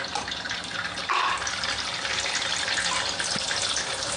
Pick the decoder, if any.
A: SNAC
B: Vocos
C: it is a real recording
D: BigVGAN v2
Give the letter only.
C